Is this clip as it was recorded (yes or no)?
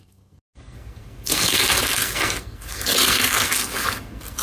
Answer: no